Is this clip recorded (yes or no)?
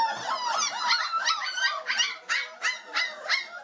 yes